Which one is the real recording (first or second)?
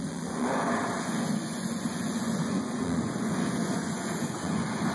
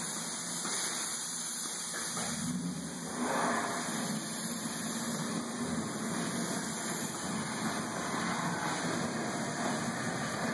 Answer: second